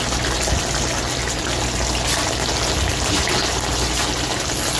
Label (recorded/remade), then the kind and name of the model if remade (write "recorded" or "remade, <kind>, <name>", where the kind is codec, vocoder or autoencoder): recorded